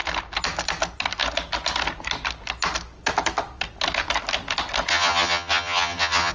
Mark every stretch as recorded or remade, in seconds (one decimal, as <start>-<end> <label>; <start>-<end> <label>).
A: 0.0-4.9 recorded; 4.9-6.3 remade